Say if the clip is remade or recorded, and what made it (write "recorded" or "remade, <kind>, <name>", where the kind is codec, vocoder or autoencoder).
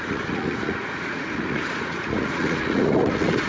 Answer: remade, vocoder, Vocos